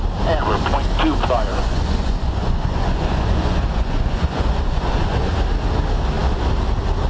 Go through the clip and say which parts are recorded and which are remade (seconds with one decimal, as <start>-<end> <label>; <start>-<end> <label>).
0.0-1.5 recorded; 1.5-5.3 remade; 5.3-7.1 recorded